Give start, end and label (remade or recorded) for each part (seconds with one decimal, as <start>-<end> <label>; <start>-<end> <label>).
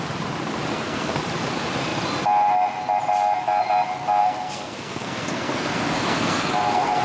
0.0-0.7 recorded; 0.7-1.2 remade; 1.2-4.2 recorded; 4.2-7.0 remade